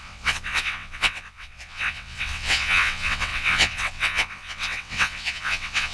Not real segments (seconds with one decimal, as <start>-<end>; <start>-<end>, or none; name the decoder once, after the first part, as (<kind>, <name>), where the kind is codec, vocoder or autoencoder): 0.0-5.9 (vocoder, WaveNeXt)